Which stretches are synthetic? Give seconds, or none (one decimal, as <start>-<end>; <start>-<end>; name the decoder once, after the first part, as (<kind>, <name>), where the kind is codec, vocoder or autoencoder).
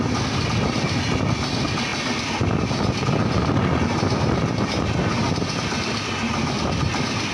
none